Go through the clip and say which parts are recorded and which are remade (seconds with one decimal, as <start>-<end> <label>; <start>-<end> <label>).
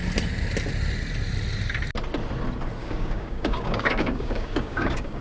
0.0-2.8 recorded; 2.8-5.2 remade